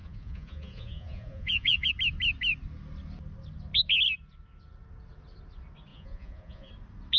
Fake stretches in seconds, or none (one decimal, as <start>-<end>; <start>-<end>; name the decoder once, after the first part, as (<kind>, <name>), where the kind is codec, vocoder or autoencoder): 0.0-1.9 (vocoder, Vocos); 5.9-6.7